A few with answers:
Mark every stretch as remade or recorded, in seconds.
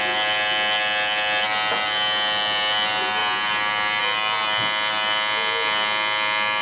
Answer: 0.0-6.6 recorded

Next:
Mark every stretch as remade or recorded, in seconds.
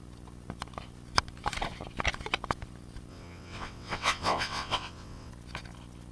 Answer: 0.0-3.1 recorded; 3.1-5.3 remade; 5.3-6.1 recorded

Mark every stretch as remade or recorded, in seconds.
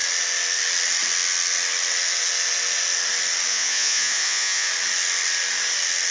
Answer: 0.0-3.5 recorded; 3.5-4.7 remade; 4.7-6.1 recorded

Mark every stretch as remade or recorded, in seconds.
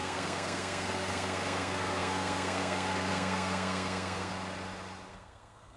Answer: 0.0-4.3 remade; 4.3-5.1 recorded; 5.1-5.8 remade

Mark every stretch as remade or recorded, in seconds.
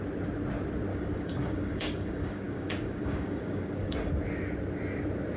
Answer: 0.0-0.9 recorded; 0.9-4.1 remade; 4.1-5.4 recorded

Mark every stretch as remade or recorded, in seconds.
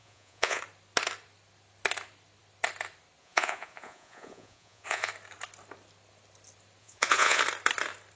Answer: 0.0-0.6 remade; 0.6-3.2 recorded; 3.2-5.1 remade; 5.1-6.8 recorded; 6.8-7.4 remade; 7.4-8.2 recorded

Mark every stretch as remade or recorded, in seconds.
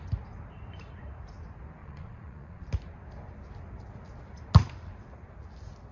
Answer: 0.0-1.8 recorded; 1.8-2.7 remade; 2.7-5.9 recorded